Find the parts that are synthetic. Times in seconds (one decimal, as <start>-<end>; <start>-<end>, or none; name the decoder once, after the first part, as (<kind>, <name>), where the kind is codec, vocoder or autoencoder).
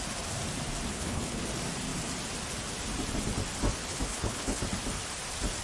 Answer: 0.9-1.4 (codec, HILCodec); 3.9-4.6